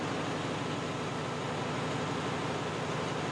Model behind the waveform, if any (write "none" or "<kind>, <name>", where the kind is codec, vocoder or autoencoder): none